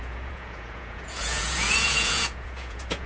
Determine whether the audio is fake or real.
fake